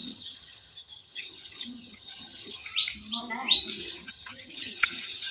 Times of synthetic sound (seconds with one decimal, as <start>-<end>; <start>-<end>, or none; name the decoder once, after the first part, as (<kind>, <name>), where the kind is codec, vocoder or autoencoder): 0.0-2.7 (vocoder, HiFi-GAN); 3.8-5.3